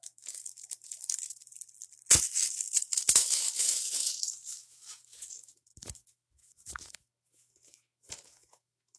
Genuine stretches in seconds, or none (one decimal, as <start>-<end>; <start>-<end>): 1.5-2.2